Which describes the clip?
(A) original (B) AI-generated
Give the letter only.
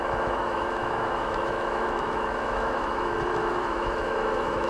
B